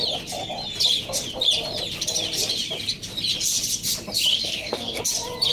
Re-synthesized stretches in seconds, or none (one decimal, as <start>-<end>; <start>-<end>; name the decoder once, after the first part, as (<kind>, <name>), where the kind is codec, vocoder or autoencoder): 4.3-5.0 (codec, SNAC)